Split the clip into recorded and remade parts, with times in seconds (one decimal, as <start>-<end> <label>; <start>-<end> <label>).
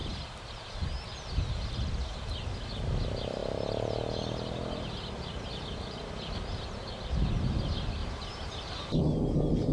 0.0-8.0 recorded; 8.0-9.0 remade; 9.0-9.7 recorded